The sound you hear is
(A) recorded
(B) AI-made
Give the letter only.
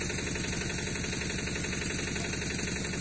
A